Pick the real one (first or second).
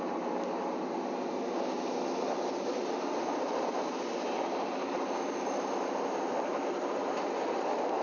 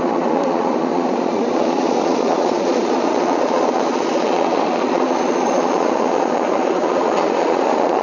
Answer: first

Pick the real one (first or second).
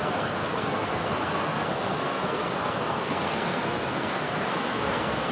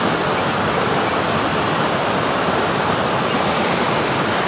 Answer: second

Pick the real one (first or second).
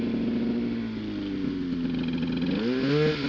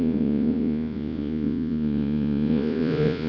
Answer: first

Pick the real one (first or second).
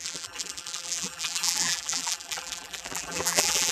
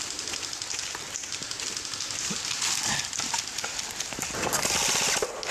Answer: second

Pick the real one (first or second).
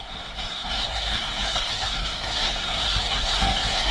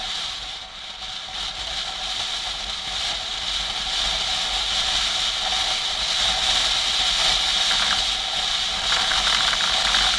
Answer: second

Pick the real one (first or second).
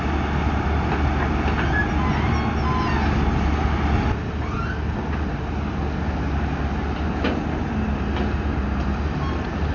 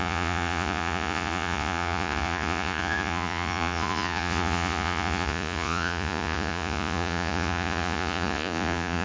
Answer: first